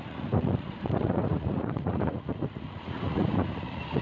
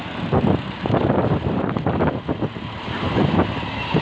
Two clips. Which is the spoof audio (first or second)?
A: first